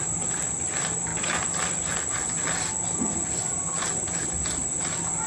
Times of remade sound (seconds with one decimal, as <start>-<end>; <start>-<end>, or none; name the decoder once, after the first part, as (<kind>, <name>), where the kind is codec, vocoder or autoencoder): none